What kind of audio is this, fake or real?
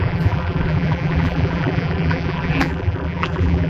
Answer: fake